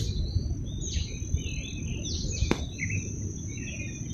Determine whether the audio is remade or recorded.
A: recorded